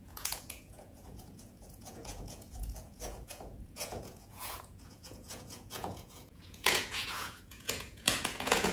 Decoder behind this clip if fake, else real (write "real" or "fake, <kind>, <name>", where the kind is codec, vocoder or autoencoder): fake, vocoder, Vocos